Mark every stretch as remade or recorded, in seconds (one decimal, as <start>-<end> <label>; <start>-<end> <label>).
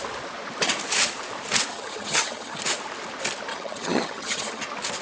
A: 0.0-1.7 recorded; 1.7-2.6 remade; 2.6-3.5 recorded; 3.5-4.6 remade; 4.6-5.0 recorded